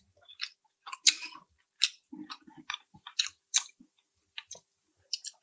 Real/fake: real